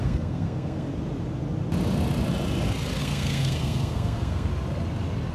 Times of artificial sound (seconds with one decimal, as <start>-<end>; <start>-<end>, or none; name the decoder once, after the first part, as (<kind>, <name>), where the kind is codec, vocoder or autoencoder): 0.0-0.9 (codec, SNAC); 3.0-4.5